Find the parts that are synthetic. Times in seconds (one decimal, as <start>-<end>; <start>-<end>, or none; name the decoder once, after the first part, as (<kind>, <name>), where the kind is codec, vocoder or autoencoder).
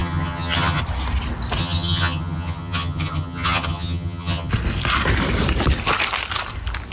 0.0-0.8 (vocoder, HiFi-GAN); 1.6-4.5